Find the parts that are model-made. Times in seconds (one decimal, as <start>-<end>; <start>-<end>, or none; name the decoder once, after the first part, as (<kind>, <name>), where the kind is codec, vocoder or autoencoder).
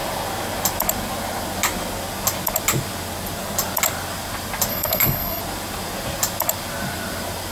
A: 4.7-5.4 (codec, SNAC)